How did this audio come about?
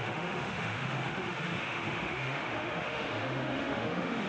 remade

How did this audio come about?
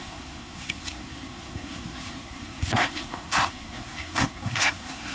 remade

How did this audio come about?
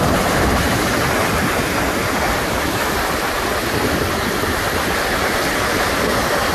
recorded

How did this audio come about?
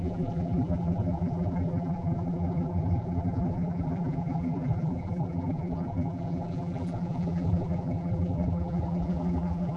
remade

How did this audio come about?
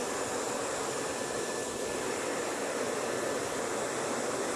recorded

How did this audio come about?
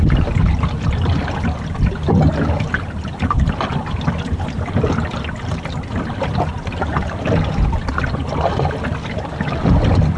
recorded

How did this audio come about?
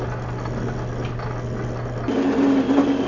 recorded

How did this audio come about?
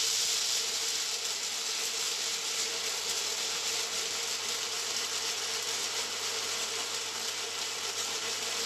recorded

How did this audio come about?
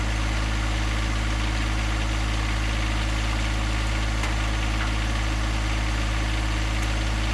recorded